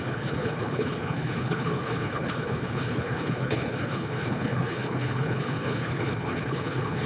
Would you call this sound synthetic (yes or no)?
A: yes